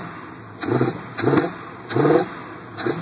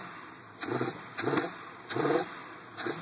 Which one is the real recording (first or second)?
first